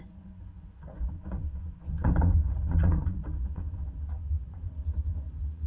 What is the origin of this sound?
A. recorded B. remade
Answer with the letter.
B